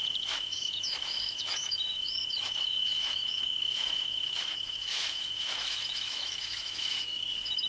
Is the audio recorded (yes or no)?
no